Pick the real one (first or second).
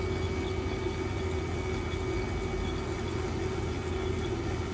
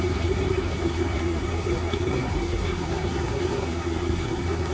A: first